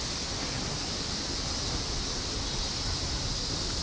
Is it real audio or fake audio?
real